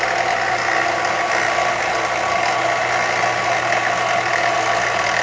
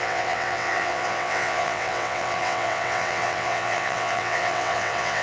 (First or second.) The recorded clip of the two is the first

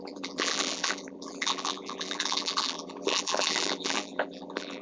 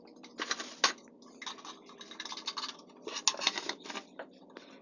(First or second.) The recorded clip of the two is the second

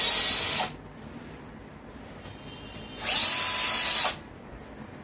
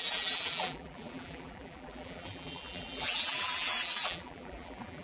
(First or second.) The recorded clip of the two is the first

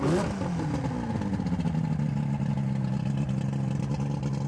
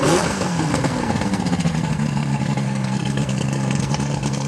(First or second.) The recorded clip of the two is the first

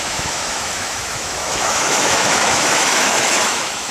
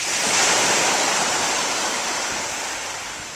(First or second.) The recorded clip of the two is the second